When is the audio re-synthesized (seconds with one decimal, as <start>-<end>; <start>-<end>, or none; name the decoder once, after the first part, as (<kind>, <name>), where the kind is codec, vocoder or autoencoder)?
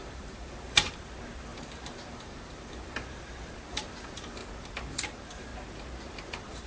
0.0-4.4 (vocoder, BigVGAN v2); 4.9-5.5; 6.1-6.7